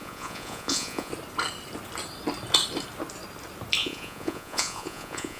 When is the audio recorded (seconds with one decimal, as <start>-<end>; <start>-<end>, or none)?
1.1-3.8